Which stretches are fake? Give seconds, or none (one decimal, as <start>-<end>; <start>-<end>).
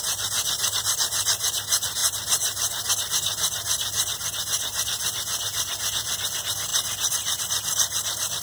none